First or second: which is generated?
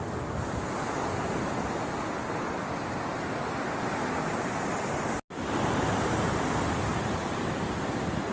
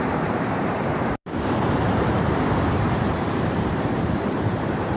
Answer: second